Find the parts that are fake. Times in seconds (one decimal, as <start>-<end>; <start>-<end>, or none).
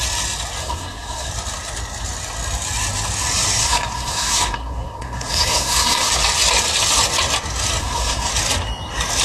0.6-1.3; 3.6-6.1; 7.8-8.3